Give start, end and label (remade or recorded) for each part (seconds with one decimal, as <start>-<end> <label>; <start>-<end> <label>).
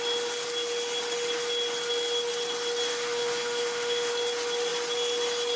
0.0-2.9 recorded; 2.9-4.1 remade; 4.1-5.6 recorded